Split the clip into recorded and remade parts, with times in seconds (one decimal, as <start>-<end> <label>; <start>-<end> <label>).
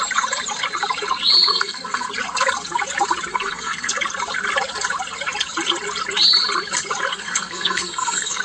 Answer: 0.0-1.5 recorded; 1.5-2.1 remade; 2.1-3.3 recorded; 3.3-3.9 remade; 3.9-7.1 recorded; 7.1-8.4 remade